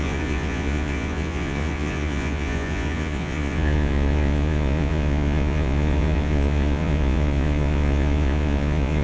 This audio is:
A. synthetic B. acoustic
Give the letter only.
A